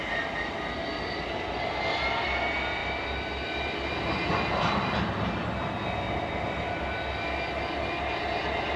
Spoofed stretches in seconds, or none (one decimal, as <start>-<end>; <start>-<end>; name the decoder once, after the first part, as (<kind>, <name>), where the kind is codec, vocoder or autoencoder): none